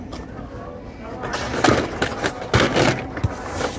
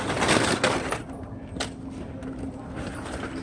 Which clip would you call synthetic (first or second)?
second